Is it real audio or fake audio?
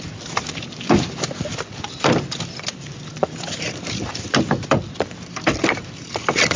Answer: fake